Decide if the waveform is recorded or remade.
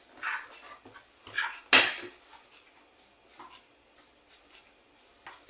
recorded